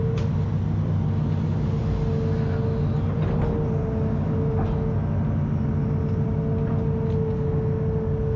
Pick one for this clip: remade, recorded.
recorded